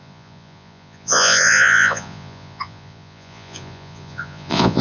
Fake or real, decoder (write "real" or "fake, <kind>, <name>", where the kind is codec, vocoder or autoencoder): fake, vocoder, Vocos